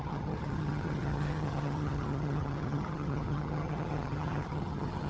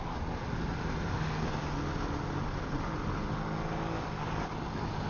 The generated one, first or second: first